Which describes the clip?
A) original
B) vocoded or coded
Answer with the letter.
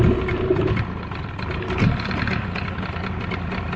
A